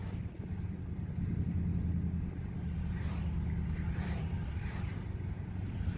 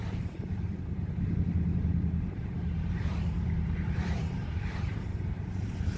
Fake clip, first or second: second